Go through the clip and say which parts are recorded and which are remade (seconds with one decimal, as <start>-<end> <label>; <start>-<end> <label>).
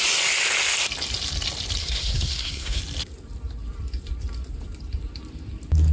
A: 0.0-1.8 recorded; 1.8-2.8 remade; 2.8-5.9 recorded